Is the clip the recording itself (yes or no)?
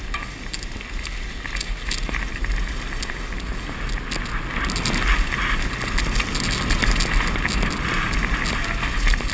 yes